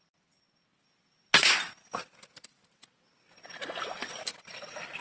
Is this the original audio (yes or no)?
yes